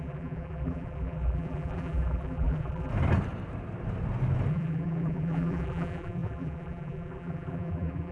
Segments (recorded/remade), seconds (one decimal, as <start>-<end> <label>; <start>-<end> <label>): 0.0-2.9 remade; 2.9-4.5 recorded; 4.5-8.1 remade